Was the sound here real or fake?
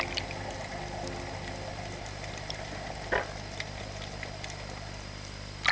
real